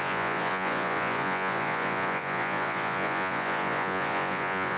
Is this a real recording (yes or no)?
no